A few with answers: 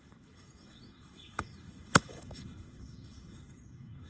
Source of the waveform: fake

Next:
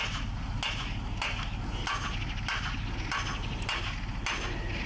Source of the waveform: real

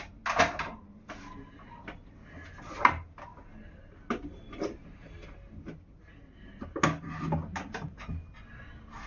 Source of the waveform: real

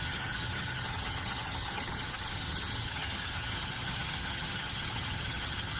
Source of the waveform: fake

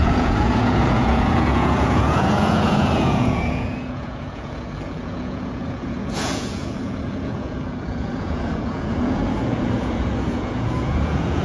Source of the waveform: fake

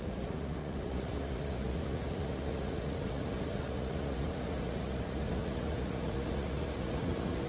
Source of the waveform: fake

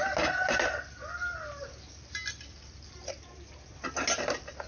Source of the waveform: real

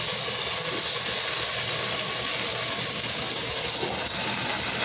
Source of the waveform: real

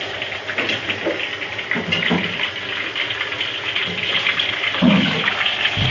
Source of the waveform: real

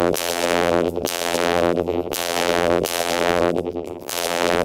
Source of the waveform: fake